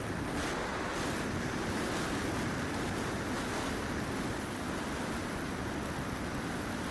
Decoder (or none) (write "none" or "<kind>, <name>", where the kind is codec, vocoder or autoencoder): none